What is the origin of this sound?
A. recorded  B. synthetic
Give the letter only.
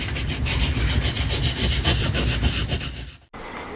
A